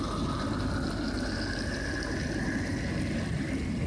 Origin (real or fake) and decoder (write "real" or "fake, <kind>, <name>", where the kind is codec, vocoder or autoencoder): real